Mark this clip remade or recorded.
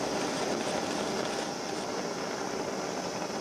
recorded